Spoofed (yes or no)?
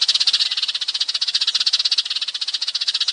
no